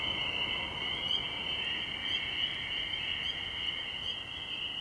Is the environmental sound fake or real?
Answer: real